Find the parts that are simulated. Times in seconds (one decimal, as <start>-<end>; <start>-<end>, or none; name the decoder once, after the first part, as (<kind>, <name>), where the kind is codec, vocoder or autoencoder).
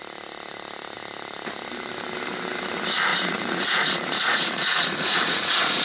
3.1-5.8 (vocoder, Vocos)